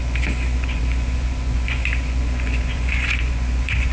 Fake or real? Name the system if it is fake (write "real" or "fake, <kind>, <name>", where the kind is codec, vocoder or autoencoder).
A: fake, vocoder, Vocos